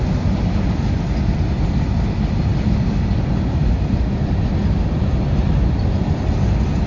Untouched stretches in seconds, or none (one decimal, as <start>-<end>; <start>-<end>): 0.0-6.9

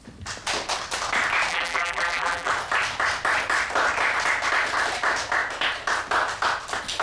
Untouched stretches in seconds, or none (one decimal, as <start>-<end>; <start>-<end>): 0.0-1.5; 2.5-7.0

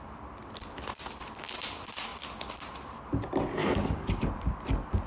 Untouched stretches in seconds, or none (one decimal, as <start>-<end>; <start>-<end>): 0.0-3.6; 4.2-5.1

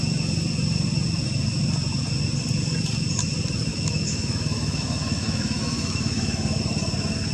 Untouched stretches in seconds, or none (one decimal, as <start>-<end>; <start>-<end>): 0.0-3.7; 6.6-7.3